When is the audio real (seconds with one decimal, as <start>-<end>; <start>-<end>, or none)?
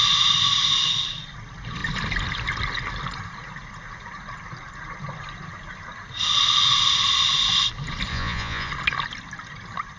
0.0-8.1; 8.7-10.0